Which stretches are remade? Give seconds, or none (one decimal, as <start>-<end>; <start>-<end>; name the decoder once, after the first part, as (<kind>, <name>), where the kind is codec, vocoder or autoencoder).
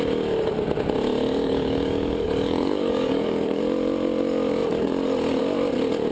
1.2-3.6 (codec, DAC)